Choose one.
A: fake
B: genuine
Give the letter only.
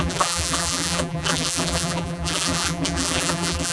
A